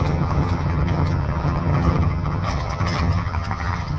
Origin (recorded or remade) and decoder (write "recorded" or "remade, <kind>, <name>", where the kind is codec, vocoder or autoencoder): remade, vocoder, HiFi-GAN